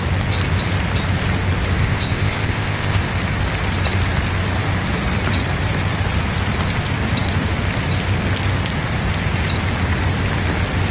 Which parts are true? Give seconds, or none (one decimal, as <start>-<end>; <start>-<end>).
0.0-1.8; 3.0-10.9